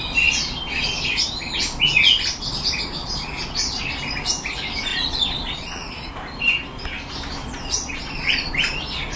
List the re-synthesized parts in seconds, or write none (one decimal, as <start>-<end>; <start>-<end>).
3.0-3.7; 4.9-6.1; 7.4-8.5